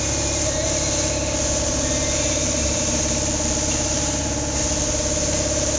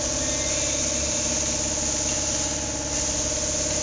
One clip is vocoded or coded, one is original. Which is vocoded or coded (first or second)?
first